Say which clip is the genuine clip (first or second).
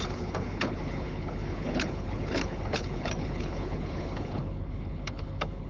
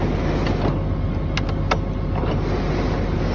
second